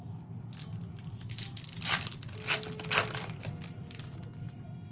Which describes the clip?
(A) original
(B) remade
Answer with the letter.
A